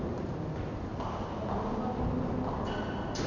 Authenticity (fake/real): real